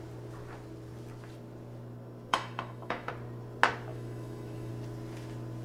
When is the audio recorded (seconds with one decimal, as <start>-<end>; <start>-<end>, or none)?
0.0-2.3; 3.1-3.9; 4.7-5.6